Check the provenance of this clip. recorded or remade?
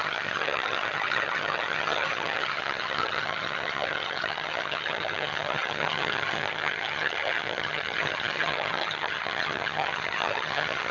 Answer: remade